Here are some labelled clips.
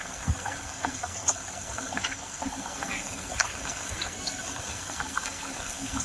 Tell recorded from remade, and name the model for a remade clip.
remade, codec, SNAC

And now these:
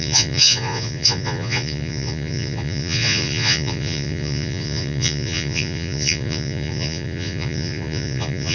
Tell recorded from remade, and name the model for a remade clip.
remade, vocoder, Vocos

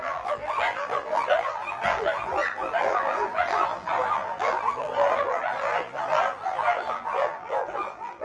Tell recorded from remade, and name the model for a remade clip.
remade, vocoder, BigVGAN v2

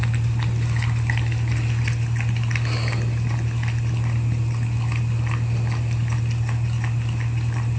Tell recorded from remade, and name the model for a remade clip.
recorded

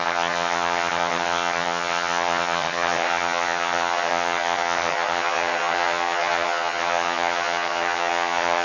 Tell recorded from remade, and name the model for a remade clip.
remade, vocoder, HiFi-GAN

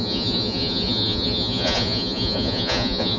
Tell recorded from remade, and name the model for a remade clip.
remade, vocoder, Vocos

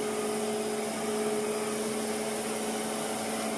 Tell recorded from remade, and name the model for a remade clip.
recorded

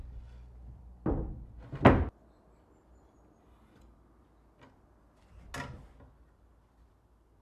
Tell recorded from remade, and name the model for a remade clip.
recorded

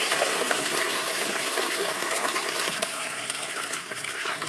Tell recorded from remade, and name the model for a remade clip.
remade, codec, SNAC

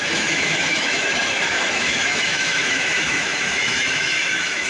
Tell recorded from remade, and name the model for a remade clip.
remade, autoencoder, DAC-VAE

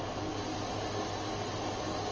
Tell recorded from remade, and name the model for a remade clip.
recorded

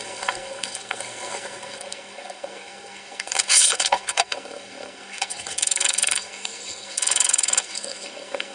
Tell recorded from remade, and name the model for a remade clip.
remade, codec, SNAC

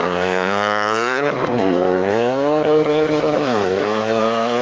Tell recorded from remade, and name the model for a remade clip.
remade, codec, SNAC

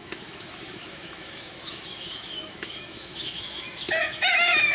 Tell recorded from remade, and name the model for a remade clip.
remade, autoencoder, DAC-VAE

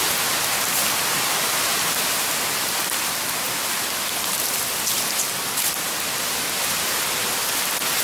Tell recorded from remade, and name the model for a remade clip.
recorded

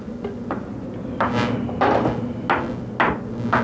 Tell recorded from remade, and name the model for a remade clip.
recorded